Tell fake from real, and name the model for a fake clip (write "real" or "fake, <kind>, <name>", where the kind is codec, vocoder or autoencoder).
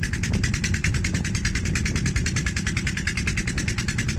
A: real